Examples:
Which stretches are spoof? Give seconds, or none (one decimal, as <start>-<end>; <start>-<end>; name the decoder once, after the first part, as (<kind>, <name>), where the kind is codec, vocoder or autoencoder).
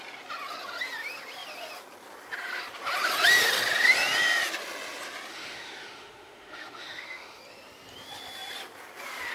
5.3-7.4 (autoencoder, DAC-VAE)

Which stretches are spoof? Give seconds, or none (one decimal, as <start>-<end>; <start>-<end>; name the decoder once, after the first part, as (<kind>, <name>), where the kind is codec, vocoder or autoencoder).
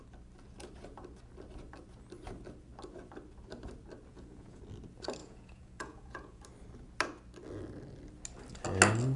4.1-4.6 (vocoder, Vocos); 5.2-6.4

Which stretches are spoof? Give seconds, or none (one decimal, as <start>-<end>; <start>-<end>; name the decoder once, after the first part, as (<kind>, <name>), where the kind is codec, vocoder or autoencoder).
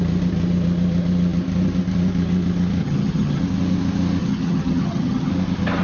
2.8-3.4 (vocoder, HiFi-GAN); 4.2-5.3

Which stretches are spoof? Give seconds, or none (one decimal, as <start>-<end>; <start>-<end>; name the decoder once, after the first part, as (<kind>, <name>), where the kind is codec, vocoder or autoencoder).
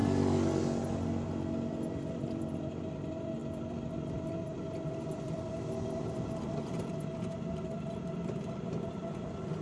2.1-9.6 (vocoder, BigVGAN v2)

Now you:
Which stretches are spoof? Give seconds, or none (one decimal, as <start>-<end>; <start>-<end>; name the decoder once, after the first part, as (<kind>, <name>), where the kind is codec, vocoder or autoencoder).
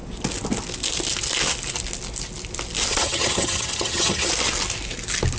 2.9-4.3 (vocoder, HiFi-GAN)